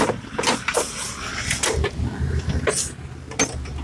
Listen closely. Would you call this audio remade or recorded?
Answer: recorded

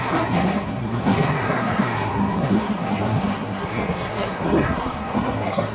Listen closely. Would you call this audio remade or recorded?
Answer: remade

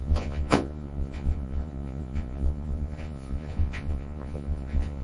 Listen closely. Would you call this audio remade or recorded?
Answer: remade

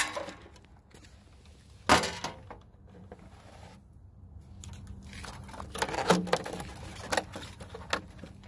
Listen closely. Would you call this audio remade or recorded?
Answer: recorded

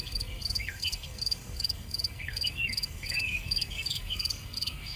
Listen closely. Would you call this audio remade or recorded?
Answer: remade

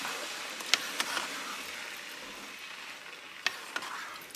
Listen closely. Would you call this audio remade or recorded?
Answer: recorded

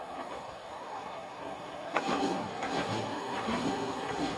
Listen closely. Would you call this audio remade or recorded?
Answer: remade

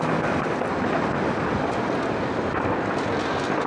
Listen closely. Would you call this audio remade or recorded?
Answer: recorded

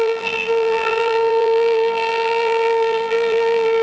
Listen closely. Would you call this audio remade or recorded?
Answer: remade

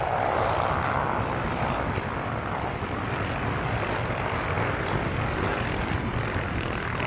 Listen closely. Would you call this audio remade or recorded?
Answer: recorded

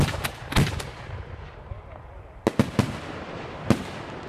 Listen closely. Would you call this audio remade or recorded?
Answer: recorded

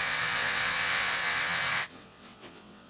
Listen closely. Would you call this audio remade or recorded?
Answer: remade